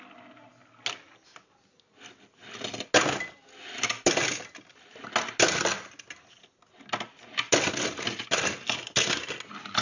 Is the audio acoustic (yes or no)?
yes